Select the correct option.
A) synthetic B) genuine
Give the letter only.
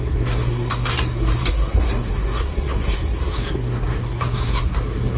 A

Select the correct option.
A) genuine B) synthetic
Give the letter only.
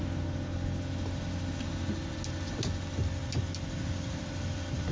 A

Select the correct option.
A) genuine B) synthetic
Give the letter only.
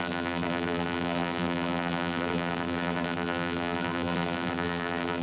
B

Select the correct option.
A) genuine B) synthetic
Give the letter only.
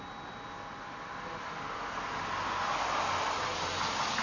A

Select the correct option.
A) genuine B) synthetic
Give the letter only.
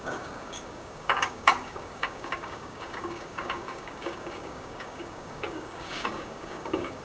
B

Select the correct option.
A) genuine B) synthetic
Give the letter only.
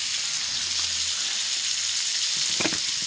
A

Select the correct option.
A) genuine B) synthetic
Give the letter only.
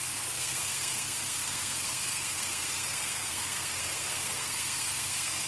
B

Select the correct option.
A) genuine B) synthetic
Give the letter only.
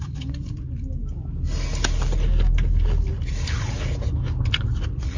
A